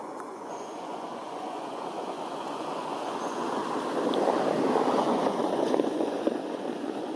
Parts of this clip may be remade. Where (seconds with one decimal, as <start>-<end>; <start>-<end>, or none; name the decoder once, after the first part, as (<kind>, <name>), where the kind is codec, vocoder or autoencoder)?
0.0-3.6 (vocoder, Vocos); 5.0-7.2